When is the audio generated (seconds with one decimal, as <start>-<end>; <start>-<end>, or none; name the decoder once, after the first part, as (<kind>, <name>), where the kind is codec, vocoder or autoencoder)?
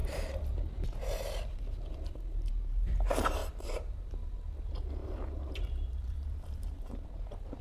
0.0-0.6 (vocoder, BigVGAN v2); 3.4-4.1; 5.0-6.8